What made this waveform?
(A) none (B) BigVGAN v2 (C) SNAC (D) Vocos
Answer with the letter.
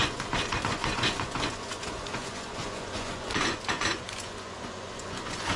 D